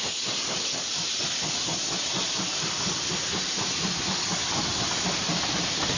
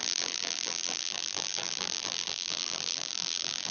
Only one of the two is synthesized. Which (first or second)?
second